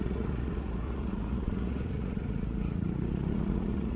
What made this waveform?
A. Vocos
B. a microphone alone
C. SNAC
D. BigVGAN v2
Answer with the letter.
A